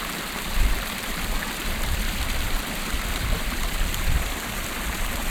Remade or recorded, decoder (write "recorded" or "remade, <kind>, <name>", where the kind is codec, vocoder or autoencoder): remade, vocoder, BigVGAN v2